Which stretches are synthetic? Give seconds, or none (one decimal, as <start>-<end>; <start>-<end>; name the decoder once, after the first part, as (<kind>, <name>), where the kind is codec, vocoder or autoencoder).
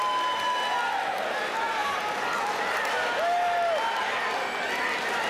none